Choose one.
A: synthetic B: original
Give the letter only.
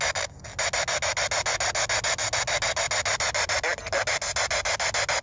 B